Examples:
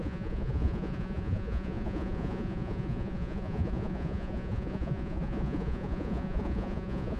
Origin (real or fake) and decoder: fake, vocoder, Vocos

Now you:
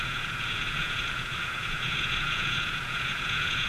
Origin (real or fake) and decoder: fake, vocoder, Vocos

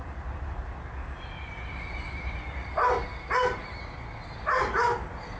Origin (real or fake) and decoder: real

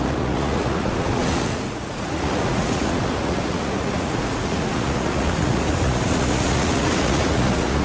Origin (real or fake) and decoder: fake, vocoder, Vocos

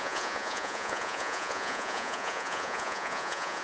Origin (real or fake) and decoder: fake, vocoder, Vocos